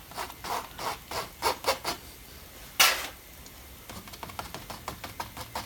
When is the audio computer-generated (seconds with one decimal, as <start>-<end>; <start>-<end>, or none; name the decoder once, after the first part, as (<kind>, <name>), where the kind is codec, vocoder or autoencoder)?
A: none

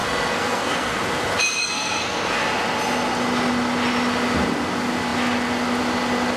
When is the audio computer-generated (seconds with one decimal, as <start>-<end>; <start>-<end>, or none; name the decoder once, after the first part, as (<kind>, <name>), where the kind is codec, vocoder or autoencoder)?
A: 0.0-1.0 (codec, SNAC); 1.6-2.4